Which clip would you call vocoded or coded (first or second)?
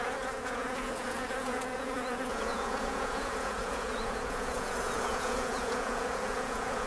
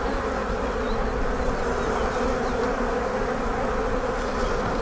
first